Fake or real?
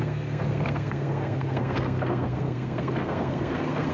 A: fake